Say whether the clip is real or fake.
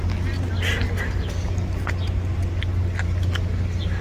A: real